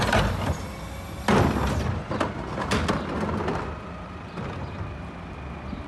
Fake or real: real